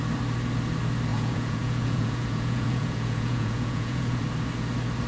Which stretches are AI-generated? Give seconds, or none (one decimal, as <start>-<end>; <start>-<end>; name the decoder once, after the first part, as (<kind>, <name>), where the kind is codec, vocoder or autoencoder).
1.1-4.2 (vocoder, Vocos)